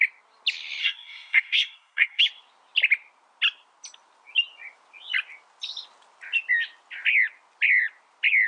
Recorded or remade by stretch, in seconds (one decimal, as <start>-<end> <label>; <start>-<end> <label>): 0.0-0.8 recorded; 0.8-2.2 remade; 2.2-8.5 recorded